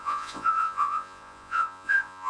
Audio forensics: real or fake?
fake